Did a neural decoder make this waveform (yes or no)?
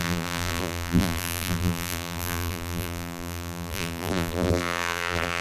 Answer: yes